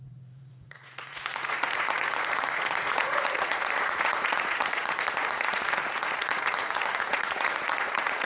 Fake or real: fake